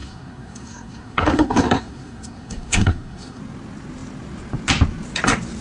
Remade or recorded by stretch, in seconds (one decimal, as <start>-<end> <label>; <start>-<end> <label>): 0.0-3.4 remade; 3.4-5.6 recorded